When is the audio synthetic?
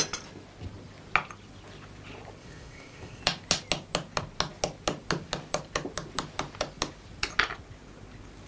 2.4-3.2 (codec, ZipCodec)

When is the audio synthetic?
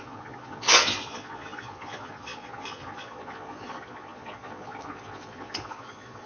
0.0-6.3 (vocoder, Vocos)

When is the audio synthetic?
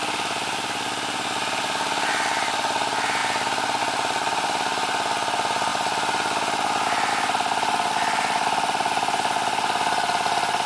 none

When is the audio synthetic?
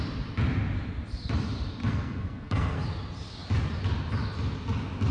1.8-2.8 (codec, SNAC)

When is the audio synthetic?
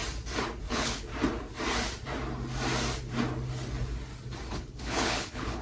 0.7-1.1 (codec, HILCodec); 4.5-5.6